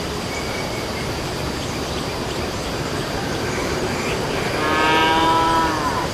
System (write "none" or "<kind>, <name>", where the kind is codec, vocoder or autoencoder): vocoder, BigVGAN v2